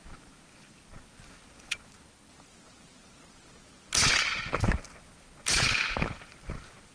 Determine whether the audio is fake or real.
real